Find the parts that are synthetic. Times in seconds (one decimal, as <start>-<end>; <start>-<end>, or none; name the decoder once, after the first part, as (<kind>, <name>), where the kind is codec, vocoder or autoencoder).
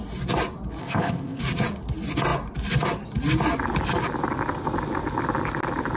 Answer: 0.8-1.4 (codec, ZipCodec)